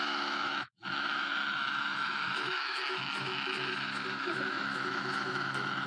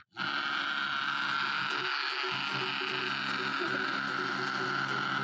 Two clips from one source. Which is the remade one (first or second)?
first